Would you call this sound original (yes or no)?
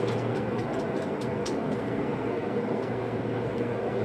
no